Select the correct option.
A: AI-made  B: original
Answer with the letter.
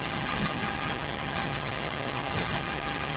A